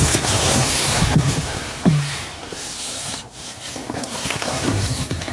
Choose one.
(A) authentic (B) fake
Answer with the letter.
B